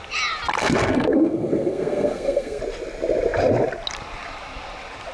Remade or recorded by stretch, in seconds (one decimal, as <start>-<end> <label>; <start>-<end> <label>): 0.0-0.6 recorded; 0.6-2.6 remade; 2.6-5.1 recorded